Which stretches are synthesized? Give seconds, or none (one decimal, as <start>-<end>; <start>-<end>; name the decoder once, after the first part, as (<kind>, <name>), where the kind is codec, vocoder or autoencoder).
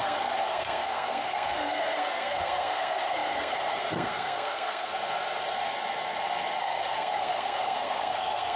0.0-4.9 (codec, SNAC); 6.6-8.6